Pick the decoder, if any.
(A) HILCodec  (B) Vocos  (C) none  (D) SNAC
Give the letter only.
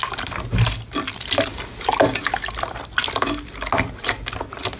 C